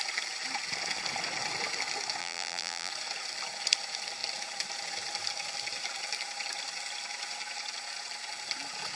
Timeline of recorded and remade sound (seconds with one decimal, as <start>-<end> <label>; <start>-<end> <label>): 0.0-2.2 recorded; 2.2-2.9 remade; 2.9-9.0 recorded